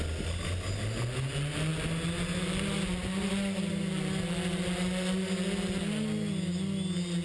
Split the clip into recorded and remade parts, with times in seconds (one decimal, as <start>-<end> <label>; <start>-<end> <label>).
0.0-7.2 recorded